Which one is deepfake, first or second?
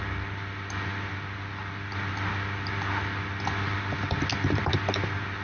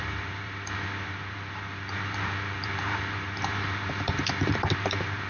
second